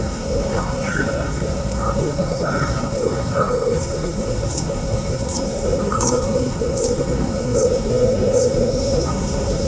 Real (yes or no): no